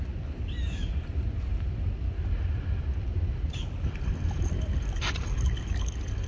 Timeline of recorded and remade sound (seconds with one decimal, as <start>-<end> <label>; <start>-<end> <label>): 0.0-1.5 recorded; 1.5-5.3 remade; 5.3-6.3 recorded